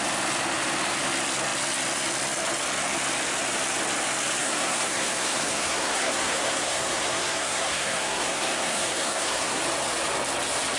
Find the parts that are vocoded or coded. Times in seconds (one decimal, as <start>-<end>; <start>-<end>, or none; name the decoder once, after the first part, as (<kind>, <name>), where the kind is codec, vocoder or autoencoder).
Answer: 4.4-9.6 (codec, SNAC)